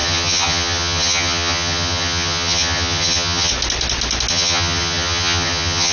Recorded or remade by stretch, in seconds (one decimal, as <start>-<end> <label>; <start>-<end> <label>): 0.0-3.5 remade; 3.5-4.3 recorded; 4.3-5.9 remade

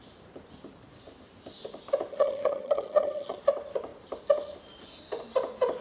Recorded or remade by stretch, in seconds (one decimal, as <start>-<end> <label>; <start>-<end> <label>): 0.0-2.1 recorded; 2.1-3.4 remade; 3.4-5.8 recorded

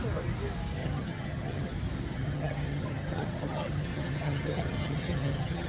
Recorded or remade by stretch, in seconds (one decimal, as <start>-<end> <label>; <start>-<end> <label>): 0.0-0.8 recorded; 0.8-1.7 remade; 1.7-2.1 recorded; 2.1-5.7 remade

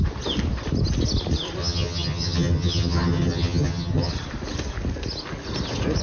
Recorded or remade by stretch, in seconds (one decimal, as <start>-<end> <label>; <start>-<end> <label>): 0.0-1.6 recorded; 1.6-4.1 remade; 4.1-6.0 recorded